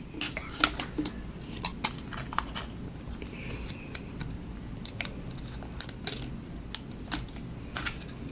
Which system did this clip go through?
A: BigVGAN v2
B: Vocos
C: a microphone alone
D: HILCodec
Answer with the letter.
C